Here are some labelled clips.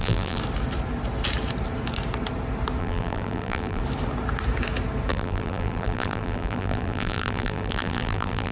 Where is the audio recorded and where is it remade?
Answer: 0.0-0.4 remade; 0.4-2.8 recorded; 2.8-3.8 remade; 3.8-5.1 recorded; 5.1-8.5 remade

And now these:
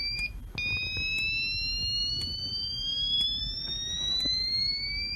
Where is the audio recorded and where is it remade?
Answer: 0.0-2.0 recorded; 2.0-5.2 remade

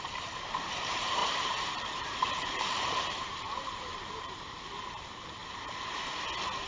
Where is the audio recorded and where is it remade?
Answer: 0.0-5.4 remade; 5.4-6.7 recorded

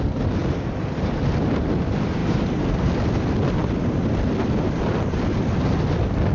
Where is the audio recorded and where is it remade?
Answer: 0.0-0.4 recorded; 0.4-1.6 remade; 1.6-2.2 recorded; 2.2-3.1 remade; 3.1-6.3 recorded

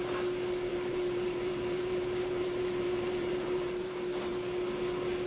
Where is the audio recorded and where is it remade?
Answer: 0.0-0.7 recorded; 0.7-3.9 remade; 3.9-5.3 recorded